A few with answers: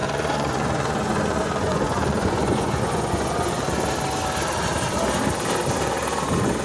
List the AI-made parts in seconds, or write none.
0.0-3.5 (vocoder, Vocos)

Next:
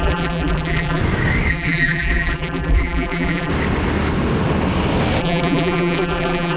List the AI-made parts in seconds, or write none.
0.0-1.0 (vocoder, BigVGAN v2); 1.5-3.5; 5.2-6.6

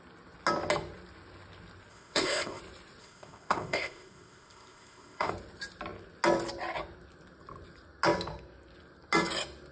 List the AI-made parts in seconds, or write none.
1.9-2.6 (codec, ZipCodec); 3.0-5.3

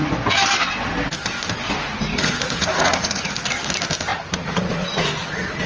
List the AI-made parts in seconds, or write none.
2.1-3.3 (vocoder, Vocos); 4.1-5.7